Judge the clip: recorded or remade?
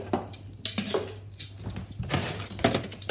recorded